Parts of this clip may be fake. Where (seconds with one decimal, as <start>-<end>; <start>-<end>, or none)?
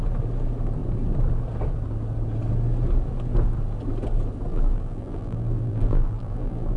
4.5-6.8